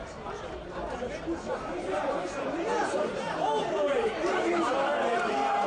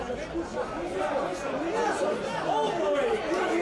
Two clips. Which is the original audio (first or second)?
second